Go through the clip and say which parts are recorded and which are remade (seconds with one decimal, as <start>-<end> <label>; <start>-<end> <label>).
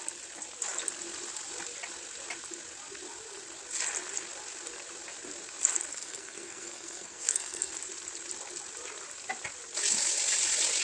0.0-5.9 recorded; 5.9-7.7 remade; 7.7-10.8 recorded